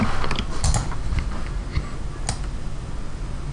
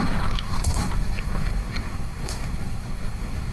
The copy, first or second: second